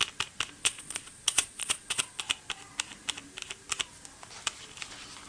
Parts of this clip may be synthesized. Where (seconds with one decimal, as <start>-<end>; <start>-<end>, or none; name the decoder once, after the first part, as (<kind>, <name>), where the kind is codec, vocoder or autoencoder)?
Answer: 0.6-2.2 (vocoder, Vocos)